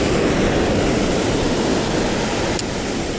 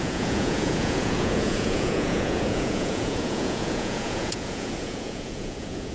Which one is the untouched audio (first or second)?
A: first